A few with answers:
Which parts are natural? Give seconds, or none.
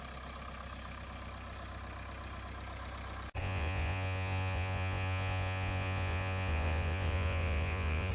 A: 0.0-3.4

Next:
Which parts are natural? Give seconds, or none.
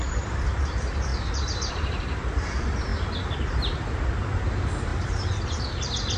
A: 1.1-1.7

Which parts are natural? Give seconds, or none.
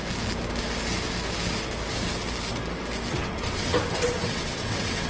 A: 0.0-3.1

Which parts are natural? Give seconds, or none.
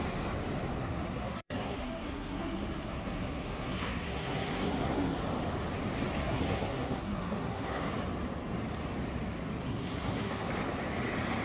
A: 0.0-0.8; 5.2-6.2; 7.9-9.6; 10.5-11.4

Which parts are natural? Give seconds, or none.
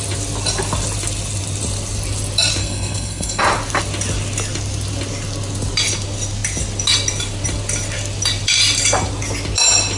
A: 0.0-2.6; 3.4-10.0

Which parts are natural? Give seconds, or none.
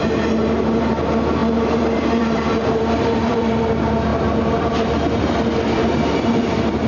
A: 0.0-1.4; 3.6-4.1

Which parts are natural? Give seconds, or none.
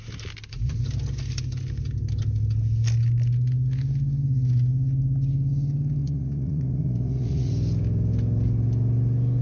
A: 0.0-6.0; 7.5-9.4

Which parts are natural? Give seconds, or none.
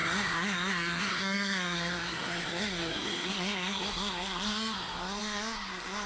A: none